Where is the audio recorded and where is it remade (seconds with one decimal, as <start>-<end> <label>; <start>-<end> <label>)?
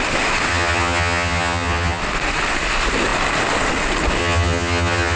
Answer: 0.0-0.5 recorded; 0.5-2.0 remade; 2.0-4.2 recorded; 4.2-5.2 remade